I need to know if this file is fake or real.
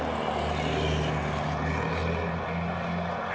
real